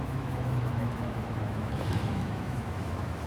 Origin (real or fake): fake